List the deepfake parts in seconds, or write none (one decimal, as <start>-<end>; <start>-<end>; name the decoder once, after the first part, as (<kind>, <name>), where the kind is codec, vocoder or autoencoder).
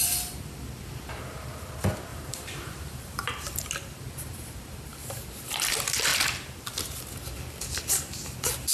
2.1-3.3 (vocoder, BigVGAN v2)